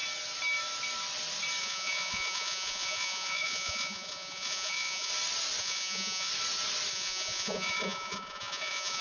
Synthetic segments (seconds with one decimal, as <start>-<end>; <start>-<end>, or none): 1.6-5.1; 5.6-6.3; 6.9-9.0